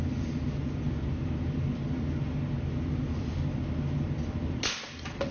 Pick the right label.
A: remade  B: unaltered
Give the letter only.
B